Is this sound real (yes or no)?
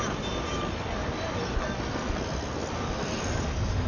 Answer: yes